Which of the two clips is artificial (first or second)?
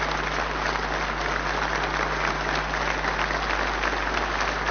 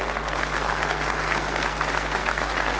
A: second